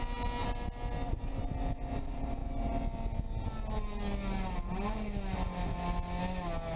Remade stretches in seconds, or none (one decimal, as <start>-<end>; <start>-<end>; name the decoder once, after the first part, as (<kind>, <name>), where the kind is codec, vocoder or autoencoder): none